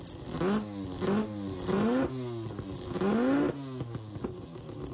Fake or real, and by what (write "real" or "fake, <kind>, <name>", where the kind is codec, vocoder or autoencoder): real